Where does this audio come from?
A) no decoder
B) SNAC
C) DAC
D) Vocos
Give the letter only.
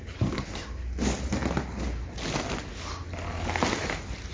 A